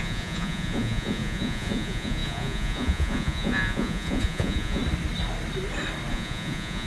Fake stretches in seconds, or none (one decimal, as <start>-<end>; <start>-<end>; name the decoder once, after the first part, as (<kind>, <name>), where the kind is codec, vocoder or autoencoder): 0.0-4.8 (vocoder, Vocos); 6.1-6.9